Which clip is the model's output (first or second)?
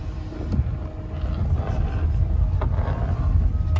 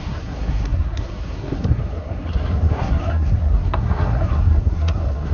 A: second